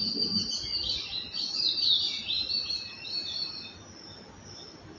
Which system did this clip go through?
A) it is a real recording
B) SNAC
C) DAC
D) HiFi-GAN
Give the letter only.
A